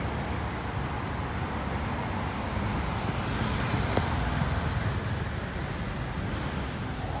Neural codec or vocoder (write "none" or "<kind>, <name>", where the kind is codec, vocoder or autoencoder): none